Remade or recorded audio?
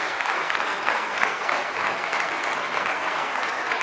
remade